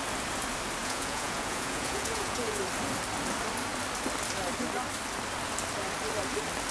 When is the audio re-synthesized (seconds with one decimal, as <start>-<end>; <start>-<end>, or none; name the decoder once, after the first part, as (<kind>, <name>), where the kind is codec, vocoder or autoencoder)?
0.8-2.6 (vocoder, Vocos)